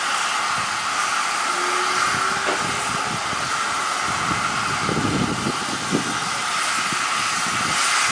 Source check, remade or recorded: recorded